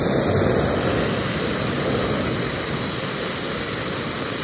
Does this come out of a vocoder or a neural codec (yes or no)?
no